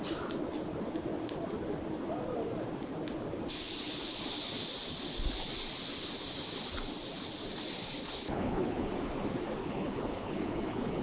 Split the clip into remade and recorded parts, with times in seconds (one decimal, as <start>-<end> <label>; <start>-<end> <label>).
0.0-8.0 recorded; 8.0-8.9 remade; 8.9-9.6 recorded; 9.6-11.0 remade